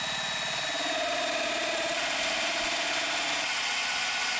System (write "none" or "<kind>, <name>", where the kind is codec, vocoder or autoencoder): none